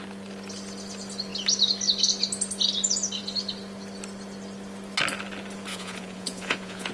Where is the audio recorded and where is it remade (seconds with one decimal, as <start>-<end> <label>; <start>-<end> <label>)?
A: 0.0-5.7 recorded; 5.7-6.9 remade